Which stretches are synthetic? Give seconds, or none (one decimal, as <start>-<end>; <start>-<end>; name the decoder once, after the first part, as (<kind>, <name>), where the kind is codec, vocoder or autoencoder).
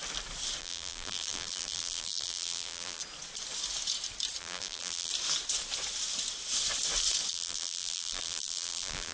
0.6-3.0 (vocoder, BigVGAN v2); 4.4-5.1; 7.3-9.1